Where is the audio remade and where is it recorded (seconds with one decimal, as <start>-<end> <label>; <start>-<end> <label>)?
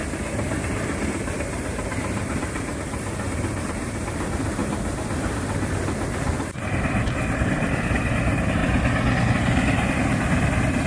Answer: 0.0-8.6 remade; 8.6-9.3 recorded; 9.3-10.9 remade